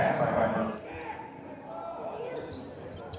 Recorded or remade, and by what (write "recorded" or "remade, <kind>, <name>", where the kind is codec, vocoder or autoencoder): recorded